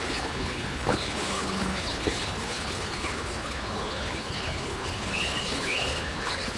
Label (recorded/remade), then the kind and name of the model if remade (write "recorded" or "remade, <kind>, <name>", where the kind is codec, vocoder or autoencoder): remade, codec, HILCodec